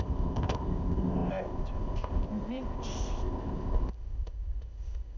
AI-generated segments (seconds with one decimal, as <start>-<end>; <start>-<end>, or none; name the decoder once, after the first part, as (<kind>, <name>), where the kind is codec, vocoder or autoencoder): 0.0-5.2 (codec, ZipCodec)